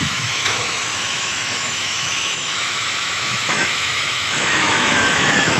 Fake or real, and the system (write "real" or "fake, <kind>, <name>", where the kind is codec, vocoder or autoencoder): fake, autoencoder, DAC-VAE